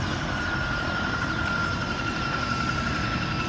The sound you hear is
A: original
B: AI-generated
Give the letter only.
A